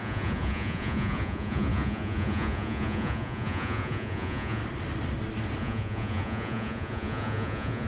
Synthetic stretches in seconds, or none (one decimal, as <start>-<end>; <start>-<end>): 0.0-4.6; 5.6-7.9